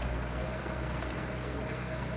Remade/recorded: remade